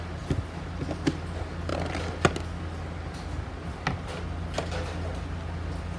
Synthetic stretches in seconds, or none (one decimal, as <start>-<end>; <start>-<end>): none